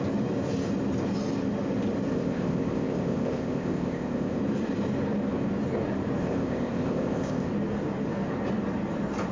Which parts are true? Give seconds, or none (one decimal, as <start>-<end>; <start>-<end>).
0.0-2.1; 4.4-6.2; 7.5-9.3